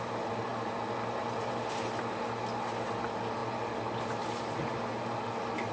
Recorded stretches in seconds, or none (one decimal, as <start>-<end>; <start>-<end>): 0.0-5.7